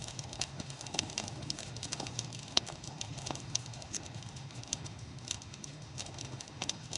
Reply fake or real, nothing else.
fake